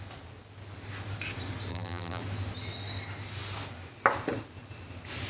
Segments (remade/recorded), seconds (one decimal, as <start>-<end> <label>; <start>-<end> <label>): 0.0-1.7 recorded; 1.7-2.2 remade; 2.2-5.3 recorded